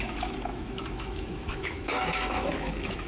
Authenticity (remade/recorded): remade